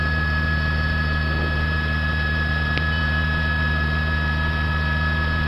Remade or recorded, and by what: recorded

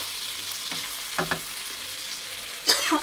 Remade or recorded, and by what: recorded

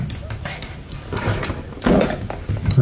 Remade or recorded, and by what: recorded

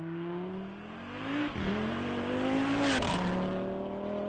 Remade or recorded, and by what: recorded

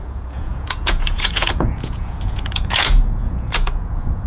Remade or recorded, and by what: remade, vocoder, Vocos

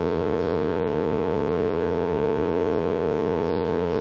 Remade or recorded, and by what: remade, vocoder, Vocos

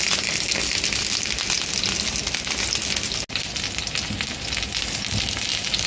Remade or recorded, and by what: recorded